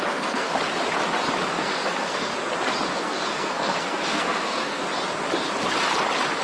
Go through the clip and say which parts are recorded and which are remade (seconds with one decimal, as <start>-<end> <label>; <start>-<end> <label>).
0.0-0.5 remade; 0.5-1.5 recorded; 1.5-2.3 remade; 2.3-2.9 recorded; 2.9-4.8 remade; 4.8-6.4 recorded